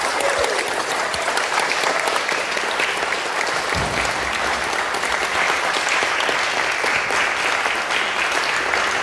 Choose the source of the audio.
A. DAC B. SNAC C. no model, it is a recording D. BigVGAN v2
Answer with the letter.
C